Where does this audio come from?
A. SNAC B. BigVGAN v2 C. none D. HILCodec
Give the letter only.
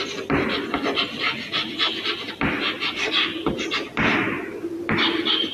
C